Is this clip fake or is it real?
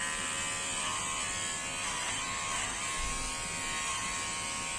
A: real